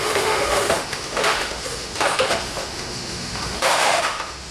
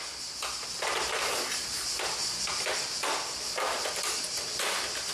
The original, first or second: second